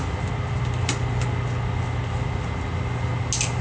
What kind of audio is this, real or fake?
real